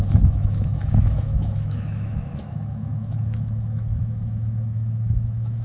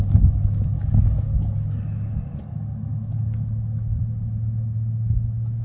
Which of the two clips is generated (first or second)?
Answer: first